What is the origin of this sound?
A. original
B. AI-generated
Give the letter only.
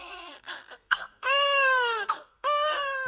B